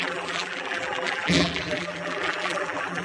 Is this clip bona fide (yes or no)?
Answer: no